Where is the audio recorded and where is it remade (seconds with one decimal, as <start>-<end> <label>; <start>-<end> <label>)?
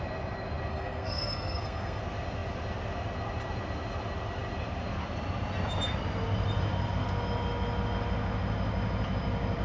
0.0-0.7 recorded; 0.7-2.0 remade; 2.0-9.6 recorded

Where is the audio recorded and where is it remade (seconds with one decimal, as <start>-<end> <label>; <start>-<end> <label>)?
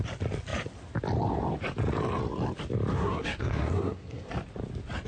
0.0-2.9 recorded; 2.9-4.3 remade; 4.3-5.1 recorded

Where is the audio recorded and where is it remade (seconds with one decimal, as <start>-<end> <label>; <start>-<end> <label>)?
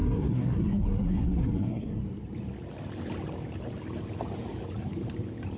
0.0-2.0 remade; 2.0-5.6 recorded